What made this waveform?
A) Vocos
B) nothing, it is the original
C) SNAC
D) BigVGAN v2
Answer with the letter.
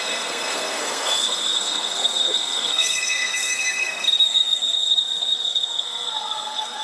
C